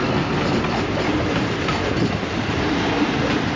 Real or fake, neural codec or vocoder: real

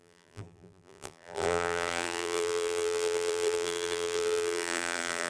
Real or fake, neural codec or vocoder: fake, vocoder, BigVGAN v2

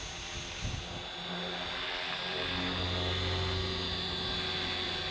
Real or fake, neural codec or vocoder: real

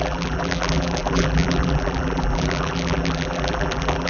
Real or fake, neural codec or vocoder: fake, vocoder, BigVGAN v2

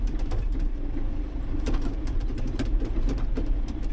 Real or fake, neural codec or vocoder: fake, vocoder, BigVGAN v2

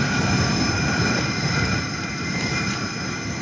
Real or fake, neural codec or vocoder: fake, vocoder, BigVGAN v2